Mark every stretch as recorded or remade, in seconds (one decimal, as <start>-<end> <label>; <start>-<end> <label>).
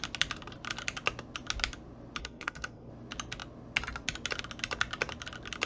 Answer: 0.0-2.2 recorded; 2.2-2.9 remade; 2.9-5.7 recorded